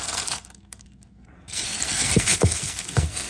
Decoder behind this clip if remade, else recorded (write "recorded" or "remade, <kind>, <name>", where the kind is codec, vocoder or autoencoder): remade, codec, SNAC